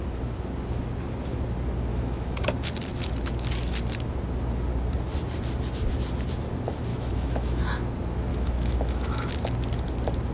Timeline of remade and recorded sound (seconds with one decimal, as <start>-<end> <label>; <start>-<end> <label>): 0.0-1.9 recorded; 1.9-2.5 remade; 2.5-6.9 recorded; 6.9-7.6 remade; 7.6-8.3 recorded; 8.3-9.3 remade; 9.3-10.3 recorded